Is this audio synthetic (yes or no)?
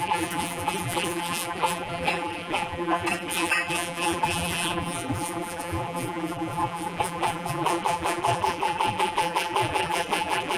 yes